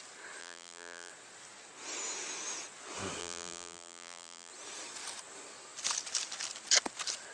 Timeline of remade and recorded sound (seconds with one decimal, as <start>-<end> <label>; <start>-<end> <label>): 0.0-0.4 recorded; 0.4-1.1 remade; 1.1-3.2 recorded; 3.2-4.5 remade; 4.5-7.3 recorded